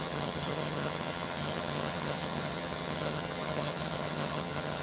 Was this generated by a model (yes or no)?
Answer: yes